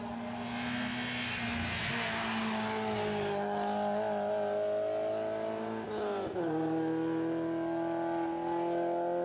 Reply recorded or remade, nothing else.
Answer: recorded